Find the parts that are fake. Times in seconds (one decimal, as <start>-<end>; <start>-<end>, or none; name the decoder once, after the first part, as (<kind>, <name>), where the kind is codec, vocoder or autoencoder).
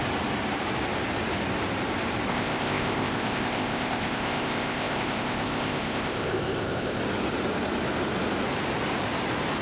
2.3-7.0 (codec, ZipCodec)